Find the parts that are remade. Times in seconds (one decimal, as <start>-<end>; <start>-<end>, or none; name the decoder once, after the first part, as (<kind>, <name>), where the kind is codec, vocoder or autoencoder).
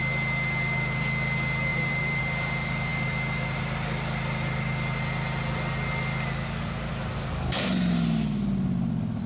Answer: 1.7-2.2 (vocoder, BigVGAN v2)